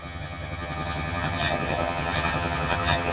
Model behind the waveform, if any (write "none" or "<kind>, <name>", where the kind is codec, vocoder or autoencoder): vocoder, HiFi-GAN